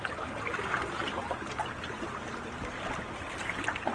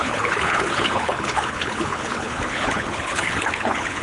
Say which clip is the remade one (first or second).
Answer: second